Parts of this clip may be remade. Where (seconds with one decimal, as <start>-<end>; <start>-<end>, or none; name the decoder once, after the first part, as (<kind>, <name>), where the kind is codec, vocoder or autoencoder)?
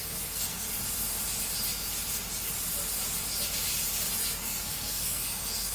0.0-0.8 (codec, SNAC); 4.2-5.7